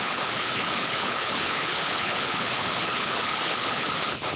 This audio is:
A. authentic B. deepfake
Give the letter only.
B